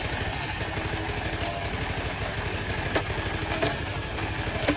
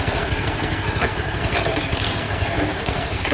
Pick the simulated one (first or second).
second